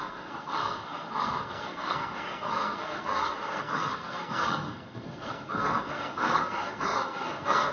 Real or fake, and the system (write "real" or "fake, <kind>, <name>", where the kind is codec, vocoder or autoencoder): fake, codec, SNAC